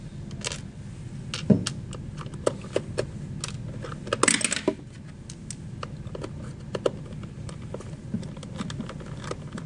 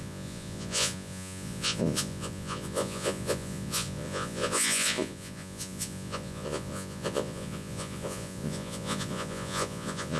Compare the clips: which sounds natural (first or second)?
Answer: first